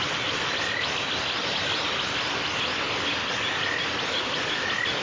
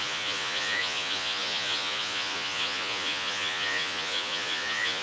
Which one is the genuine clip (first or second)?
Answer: first